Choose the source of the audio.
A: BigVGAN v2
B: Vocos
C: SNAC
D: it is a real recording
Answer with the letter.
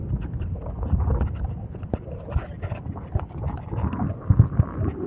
D